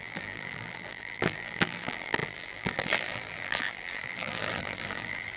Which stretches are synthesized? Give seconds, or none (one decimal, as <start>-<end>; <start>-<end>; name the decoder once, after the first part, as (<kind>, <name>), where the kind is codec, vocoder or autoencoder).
0.0-5.4 (vocoder, BigVGAN v2)